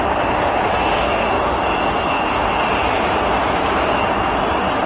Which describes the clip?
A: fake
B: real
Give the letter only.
B